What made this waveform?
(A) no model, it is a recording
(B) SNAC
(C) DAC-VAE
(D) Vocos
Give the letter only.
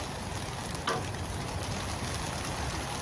A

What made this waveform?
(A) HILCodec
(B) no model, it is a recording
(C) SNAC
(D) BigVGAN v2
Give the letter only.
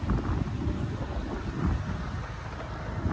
B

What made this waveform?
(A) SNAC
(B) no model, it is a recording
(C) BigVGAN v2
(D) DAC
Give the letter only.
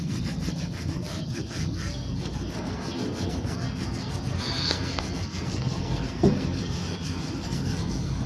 A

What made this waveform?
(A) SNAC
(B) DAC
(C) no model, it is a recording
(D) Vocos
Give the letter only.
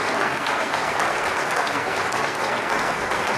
A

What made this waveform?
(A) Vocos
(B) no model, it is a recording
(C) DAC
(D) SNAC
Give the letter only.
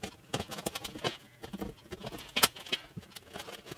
B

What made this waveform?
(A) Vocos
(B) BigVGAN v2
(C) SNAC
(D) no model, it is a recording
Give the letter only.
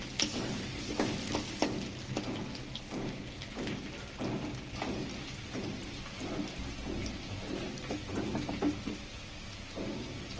D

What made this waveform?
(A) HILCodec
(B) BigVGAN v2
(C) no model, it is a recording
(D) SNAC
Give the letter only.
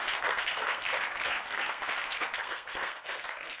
D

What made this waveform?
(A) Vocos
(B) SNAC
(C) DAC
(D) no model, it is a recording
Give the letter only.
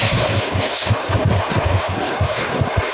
B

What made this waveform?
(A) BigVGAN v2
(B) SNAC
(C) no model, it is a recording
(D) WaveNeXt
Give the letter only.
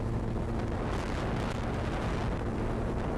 C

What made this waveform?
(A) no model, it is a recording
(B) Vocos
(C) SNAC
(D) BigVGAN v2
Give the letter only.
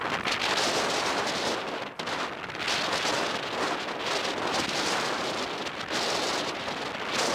A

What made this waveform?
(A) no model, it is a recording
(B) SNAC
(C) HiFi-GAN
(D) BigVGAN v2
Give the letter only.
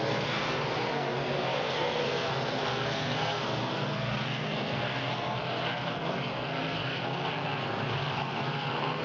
B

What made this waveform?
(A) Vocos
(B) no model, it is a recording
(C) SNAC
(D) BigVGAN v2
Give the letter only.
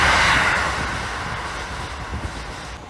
B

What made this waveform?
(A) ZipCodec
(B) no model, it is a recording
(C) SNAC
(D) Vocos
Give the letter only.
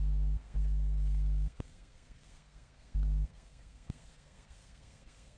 C